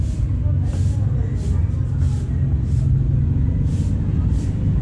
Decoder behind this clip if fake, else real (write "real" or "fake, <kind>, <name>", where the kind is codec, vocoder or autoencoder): real